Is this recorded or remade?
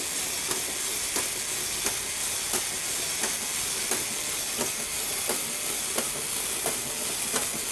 recorded